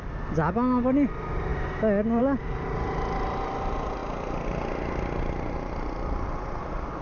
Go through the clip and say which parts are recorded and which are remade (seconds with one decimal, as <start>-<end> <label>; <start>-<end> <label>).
0.0-7.0 recorded